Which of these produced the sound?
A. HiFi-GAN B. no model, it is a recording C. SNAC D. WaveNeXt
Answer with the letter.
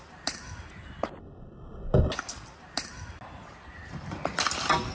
B